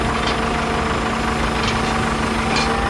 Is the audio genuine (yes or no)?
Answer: yes